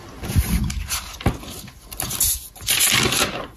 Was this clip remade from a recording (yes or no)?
no